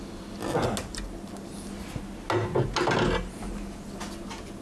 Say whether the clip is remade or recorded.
recorded